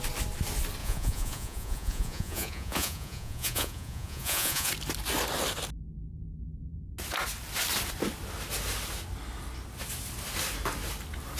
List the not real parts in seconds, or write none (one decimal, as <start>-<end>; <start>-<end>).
0.8-4.7